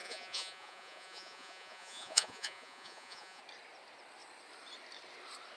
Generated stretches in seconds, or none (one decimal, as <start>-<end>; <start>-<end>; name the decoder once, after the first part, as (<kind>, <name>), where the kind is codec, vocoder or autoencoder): 0.0-3.4 (vocoder, Vocos)